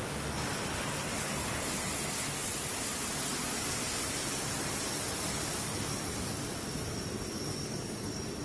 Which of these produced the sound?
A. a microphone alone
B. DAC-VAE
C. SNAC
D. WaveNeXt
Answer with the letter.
A